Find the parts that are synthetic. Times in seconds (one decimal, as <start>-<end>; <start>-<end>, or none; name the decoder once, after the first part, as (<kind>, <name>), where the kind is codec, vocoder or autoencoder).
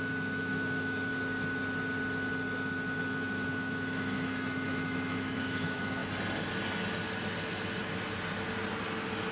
0.0-1.1 (autoencoder, DAC-VAE); 3.0-6.0